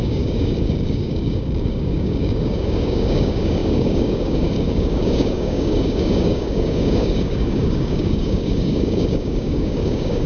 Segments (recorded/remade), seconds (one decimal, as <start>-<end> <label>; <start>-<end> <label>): 0.0-10.3 remade